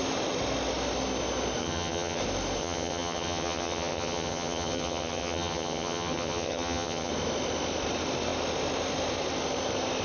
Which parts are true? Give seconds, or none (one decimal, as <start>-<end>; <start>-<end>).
0.0-1.6; 2.2-2.6; 7.1-10.0